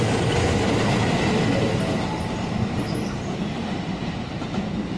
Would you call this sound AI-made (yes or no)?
yes